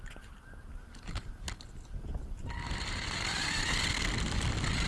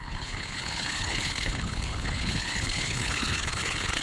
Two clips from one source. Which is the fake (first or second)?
second